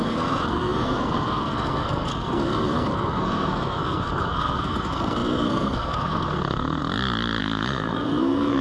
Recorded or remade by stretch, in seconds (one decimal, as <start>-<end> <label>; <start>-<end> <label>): 0.0-6.8 remade; 6.8-7.4 recorded; 7.4-8.6 remade